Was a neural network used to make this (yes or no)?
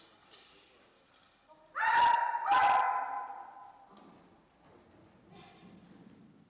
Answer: no